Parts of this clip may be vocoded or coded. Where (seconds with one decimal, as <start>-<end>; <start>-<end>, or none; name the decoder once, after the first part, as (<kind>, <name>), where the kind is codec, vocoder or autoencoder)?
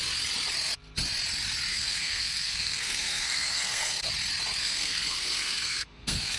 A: 1.7-4.1 (codec, SNAC); 4.6-6.4